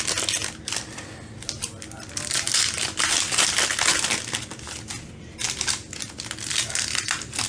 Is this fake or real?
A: real